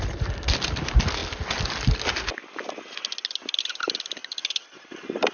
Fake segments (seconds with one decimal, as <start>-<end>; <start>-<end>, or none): none